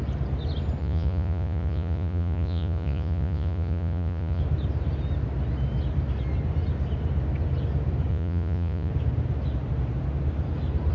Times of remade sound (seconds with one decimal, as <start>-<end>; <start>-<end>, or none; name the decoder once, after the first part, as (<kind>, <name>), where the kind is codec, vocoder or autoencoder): 0.8-4.4 (vocoder, Vocos); 8.1-8.9